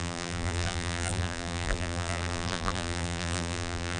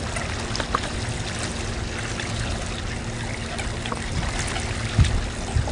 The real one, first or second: second